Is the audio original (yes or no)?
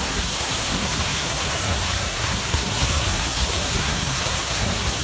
no